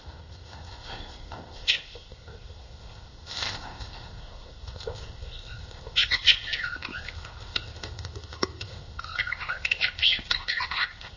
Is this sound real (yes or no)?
no